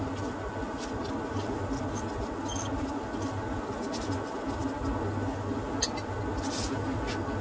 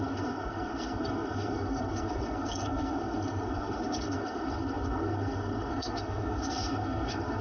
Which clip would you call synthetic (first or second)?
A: second